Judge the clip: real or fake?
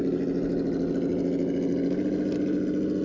real